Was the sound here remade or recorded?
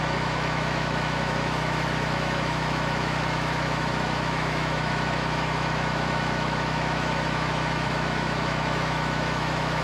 remade